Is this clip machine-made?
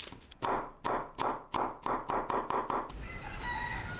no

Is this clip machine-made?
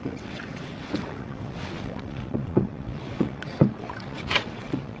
yes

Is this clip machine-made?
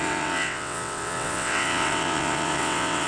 yes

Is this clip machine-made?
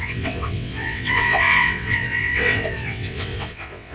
yes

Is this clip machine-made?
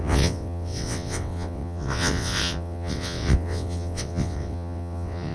yes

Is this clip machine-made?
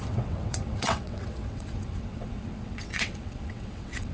yes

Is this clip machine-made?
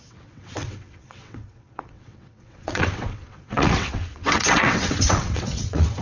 yes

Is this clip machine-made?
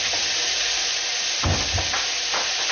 no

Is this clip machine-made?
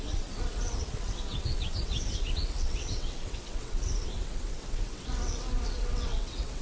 yes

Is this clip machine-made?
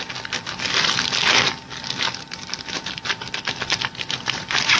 no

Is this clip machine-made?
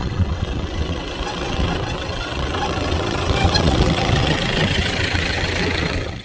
yes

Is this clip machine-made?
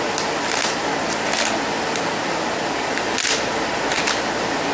no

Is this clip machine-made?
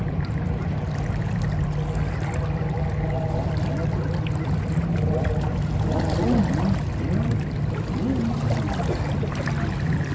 no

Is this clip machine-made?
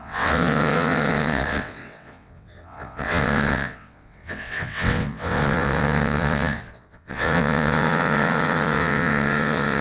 yes